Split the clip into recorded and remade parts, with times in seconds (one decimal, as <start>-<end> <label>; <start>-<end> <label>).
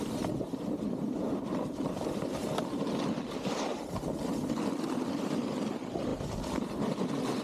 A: 0.0-7.4 recorded